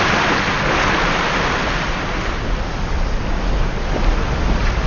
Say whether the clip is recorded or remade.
recorded